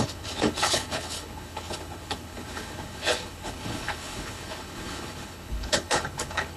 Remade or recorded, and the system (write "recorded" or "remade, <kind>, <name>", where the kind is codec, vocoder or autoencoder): remade, codec, HILCodec